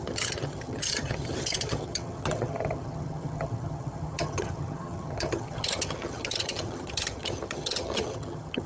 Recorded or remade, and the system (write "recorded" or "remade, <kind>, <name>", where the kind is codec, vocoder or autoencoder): remade, vocoder, HiFi-GAN